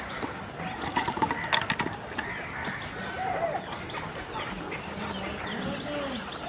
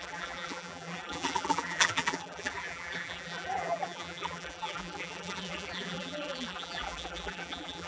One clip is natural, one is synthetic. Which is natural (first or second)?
first